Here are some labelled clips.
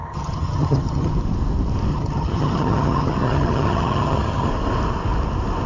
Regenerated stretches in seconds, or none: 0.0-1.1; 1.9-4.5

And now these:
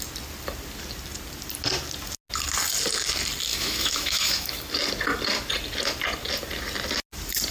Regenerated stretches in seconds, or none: 3.5-4.7

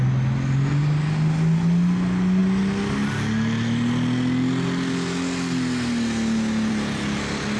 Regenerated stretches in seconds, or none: none

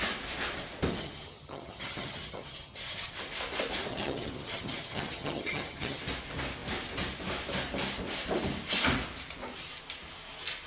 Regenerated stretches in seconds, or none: 0.9-3.1; 3.9-6.0